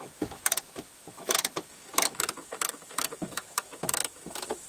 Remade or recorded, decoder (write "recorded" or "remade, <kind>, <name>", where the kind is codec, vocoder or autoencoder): remade, autoencoder, DAC-VAE